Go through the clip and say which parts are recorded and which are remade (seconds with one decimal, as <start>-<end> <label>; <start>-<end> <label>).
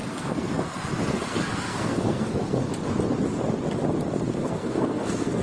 0.0-2.7 remade; 2.7-4.4 recorded; 4.4-5.4 remade